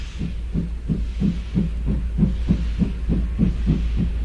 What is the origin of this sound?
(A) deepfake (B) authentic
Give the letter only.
B